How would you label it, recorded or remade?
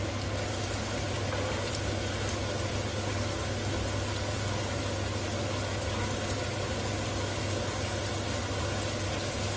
recorded